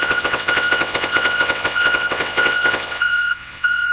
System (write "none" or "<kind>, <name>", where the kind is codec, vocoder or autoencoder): vocoder, WaveNeXt